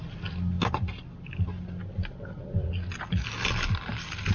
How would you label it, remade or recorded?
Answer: recorded